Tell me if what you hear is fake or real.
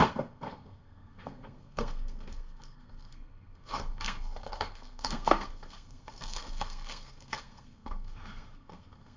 fake